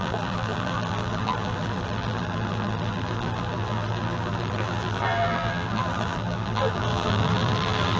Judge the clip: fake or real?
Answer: fake